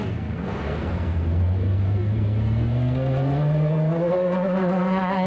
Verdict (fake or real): fake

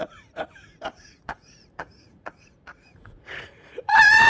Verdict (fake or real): fake